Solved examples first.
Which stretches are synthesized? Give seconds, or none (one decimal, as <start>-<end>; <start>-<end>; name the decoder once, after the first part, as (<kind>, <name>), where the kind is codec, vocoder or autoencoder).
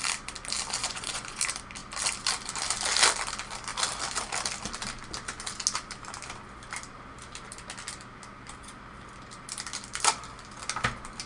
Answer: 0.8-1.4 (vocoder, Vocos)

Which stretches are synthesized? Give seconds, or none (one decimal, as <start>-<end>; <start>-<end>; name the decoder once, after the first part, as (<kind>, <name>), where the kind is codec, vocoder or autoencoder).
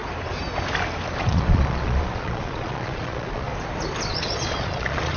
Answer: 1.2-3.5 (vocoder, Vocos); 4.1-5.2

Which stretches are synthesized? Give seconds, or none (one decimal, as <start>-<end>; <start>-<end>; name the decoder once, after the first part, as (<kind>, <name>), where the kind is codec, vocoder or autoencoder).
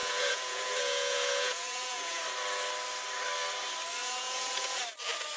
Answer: 0.0-2.2 (vocoder, Vocos); 4.0-4.8